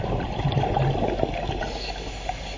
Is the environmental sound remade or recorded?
recorded